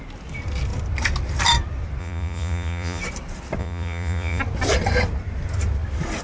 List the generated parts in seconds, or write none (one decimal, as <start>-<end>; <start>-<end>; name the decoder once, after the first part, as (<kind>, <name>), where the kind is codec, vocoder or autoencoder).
2.0-3.0 (vocoder, Vocos); 3.6-4.4